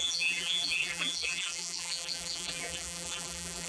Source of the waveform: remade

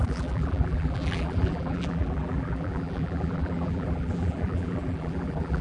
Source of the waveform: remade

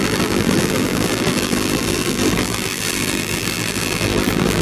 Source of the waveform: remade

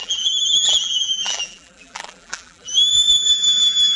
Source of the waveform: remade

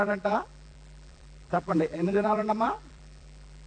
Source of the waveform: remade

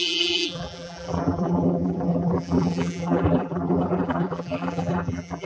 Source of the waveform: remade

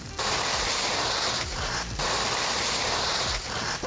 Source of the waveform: remade